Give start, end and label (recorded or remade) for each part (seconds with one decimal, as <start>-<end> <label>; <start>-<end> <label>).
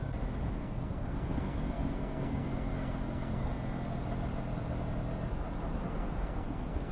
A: 0.0-0.5 recorded; 0.5-3.5 remade; 3.5-5.8 recorded; 5.8-6.9 remade